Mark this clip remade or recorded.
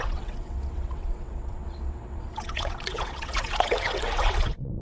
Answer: remade